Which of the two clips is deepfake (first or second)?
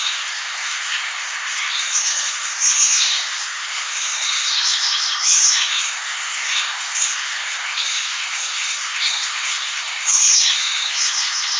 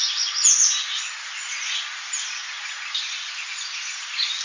first